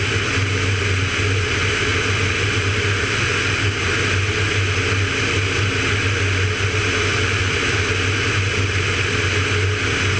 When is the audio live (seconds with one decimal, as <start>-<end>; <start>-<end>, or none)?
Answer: 0.0-10.2